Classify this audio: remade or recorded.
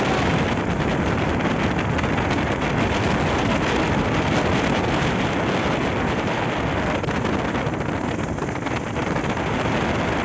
recorded